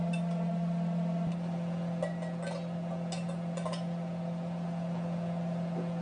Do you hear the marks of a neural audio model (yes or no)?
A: no